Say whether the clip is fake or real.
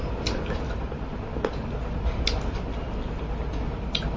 real